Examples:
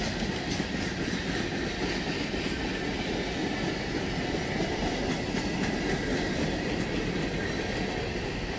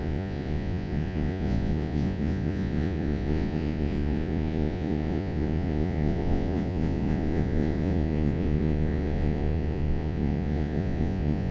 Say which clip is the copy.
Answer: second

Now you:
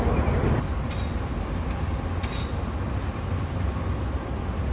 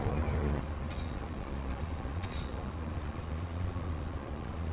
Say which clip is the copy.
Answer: second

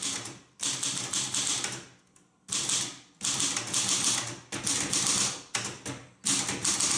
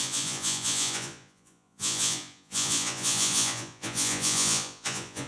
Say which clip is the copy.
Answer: second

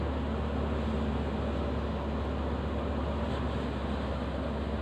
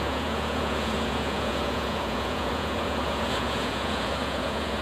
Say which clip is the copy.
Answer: second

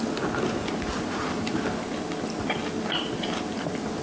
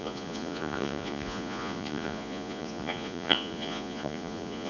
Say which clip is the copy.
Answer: second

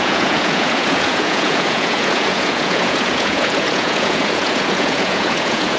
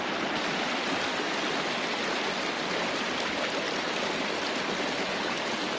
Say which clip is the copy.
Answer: first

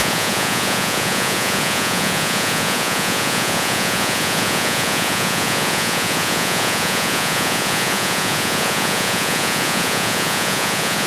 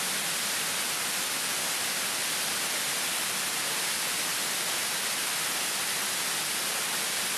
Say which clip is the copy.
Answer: first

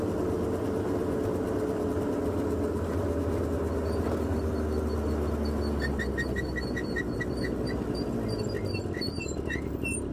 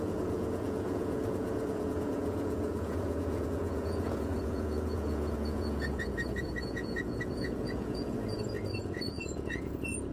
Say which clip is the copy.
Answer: second